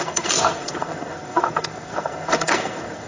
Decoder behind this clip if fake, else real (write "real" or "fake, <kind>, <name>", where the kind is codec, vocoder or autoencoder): fake, codec, SNAC